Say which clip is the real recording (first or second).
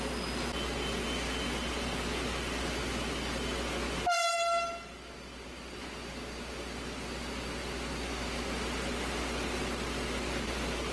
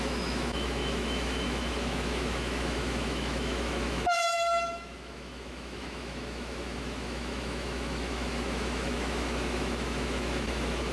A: first